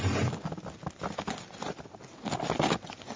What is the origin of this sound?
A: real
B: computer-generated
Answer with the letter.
A